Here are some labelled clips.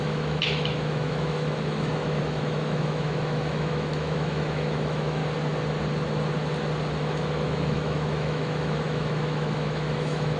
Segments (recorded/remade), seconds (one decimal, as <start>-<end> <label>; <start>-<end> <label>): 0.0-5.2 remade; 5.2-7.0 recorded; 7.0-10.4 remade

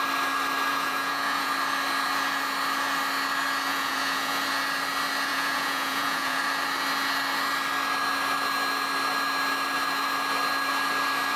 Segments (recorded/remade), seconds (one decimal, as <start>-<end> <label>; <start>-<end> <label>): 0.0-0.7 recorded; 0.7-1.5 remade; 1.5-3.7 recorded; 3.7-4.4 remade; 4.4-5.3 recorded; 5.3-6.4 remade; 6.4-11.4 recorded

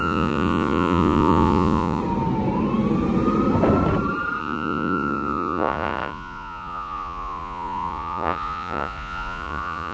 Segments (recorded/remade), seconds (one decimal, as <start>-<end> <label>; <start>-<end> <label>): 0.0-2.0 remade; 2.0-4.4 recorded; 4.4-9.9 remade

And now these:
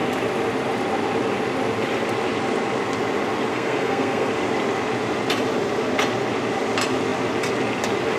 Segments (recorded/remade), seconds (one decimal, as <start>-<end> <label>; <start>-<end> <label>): 0.0-3.5 recorded; 3.5-4.3 remade; 4.3-8.2 recorded

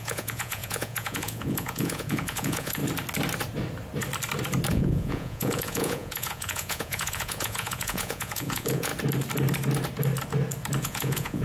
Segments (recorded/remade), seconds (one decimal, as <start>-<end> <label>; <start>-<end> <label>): 0.0-2.8 remade; 2.8-4.7 recorded; 4.7-8.9 remade; 8.9-10.8 recorded; 10.8-11.4 remade

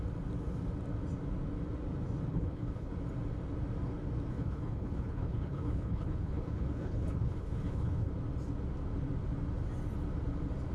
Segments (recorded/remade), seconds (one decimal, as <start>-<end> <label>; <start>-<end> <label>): 0.0-2.3 recorded; 2.3-2.9 remade; 2.9-4.3 recorded; 4.3-8.1 remade; 8.1-10.7 recorded

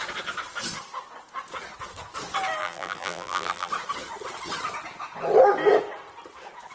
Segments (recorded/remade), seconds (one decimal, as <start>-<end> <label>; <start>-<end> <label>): 0.0-2.6 recorded; 2.6-3.7 remade; 3.7-6.7 recorded